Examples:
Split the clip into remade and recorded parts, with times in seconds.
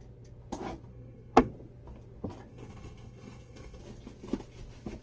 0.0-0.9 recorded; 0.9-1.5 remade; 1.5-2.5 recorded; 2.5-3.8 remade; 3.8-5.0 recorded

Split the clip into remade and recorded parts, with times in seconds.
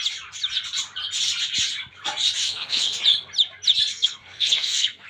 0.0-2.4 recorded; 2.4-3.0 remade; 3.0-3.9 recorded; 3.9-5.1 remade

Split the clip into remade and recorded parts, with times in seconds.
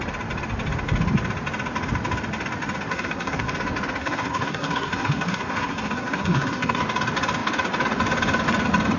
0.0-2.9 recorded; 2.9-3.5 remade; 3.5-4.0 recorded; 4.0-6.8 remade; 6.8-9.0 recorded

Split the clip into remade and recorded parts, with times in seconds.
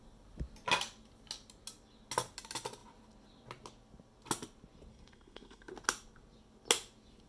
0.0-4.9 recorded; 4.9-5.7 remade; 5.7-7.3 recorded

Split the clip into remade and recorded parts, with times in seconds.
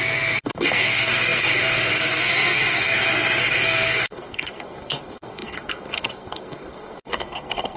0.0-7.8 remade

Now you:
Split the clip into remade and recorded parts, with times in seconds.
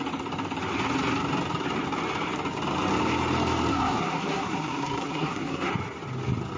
0.0-3.7 recorded; 3.7-5.7 remade; 5.7-6.6 recorded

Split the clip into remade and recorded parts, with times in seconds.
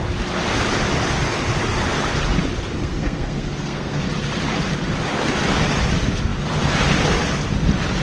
0.0-2.8 recorded; 2.8-4.1 remade; 4.1-8.0 recorded